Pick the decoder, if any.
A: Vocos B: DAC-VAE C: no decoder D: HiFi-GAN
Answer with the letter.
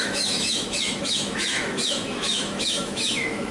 B